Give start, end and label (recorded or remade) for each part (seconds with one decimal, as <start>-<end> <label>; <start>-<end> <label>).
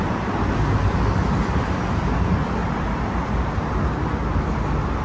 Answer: 0.0-2.6 recorded; 2.6-4.1 remade; 4.1-5.0 recorded